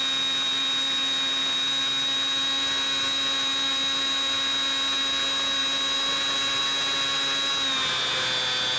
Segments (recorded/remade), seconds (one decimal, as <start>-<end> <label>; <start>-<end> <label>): 0.0-8.8 recorded